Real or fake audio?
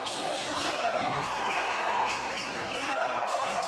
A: fake